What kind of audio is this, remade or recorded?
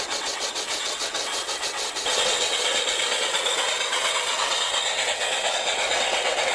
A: remade